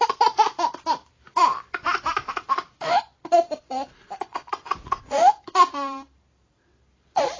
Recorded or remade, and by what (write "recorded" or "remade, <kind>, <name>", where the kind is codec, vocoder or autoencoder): remade, vocoder, BigVGAN v2